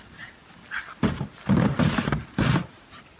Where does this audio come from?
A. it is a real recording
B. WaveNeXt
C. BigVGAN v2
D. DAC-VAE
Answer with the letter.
A